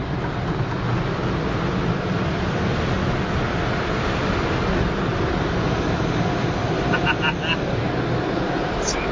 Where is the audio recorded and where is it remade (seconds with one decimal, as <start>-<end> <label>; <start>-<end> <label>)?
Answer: 0.0-9.1 recorded